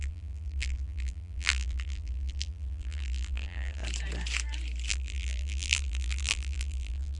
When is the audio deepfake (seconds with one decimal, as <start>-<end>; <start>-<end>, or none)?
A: 0.0-3.8; 4.9-7.2